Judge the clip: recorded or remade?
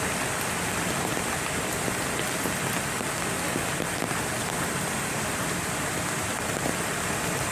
recorded